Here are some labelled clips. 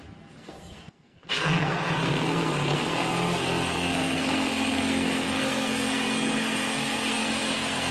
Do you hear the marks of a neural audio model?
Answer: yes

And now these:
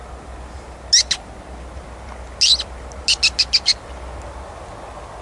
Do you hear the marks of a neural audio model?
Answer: no